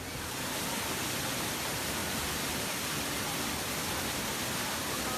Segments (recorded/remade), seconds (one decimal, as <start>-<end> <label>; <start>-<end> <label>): 0.0-5.2 recorded